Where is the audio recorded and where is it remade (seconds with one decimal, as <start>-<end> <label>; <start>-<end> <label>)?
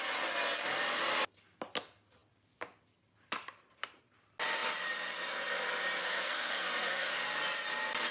0.0-6.0 recorded; 6.0-7.1 remade; 7.1-8.1 recorded